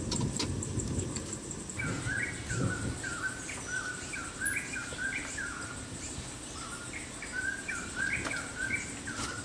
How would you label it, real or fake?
real